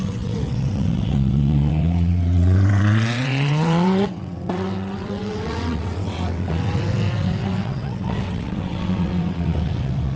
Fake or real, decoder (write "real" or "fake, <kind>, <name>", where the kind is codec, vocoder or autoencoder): fake, vocoder, WaveNeXt